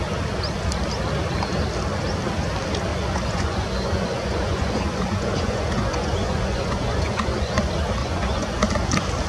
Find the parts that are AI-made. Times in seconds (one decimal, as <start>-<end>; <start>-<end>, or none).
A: 2.9-7.6; 8.0-8.7